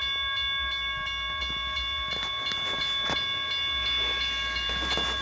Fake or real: real